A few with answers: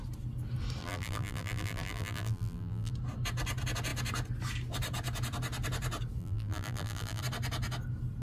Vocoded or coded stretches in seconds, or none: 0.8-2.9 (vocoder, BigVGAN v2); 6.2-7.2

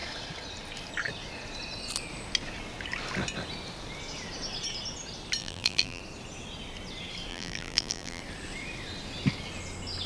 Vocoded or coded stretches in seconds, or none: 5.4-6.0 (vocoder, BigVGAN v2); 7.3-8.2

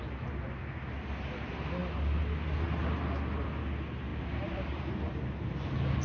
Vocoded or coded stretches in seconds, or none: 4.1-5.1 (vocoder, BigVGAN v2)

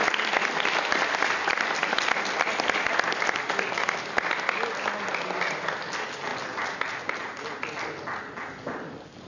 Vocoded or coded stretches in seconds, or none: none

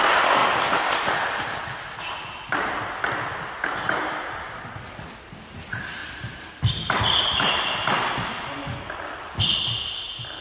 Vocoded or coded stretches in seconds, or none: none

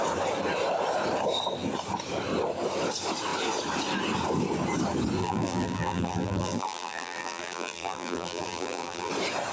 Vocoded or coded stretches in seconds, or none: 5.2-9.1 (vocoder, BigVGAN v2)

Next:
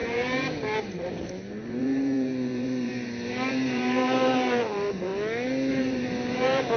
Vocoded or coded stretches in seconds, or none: 0.0-5.1 (vocoder, BigVGAN v2); 5.7-6.8

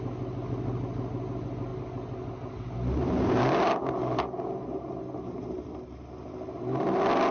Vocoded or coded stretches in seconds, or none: none